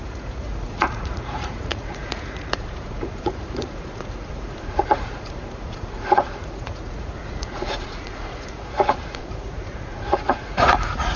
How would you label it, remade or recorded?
remade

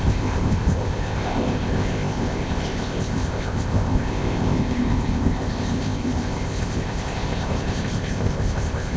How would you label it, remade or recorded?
remade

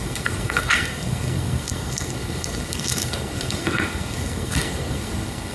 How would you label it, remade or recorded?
remade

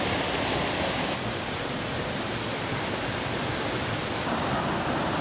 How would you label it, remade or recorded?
remade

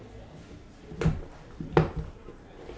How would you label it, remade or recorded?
recorded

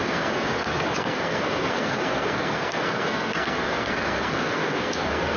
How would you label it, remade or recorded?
remade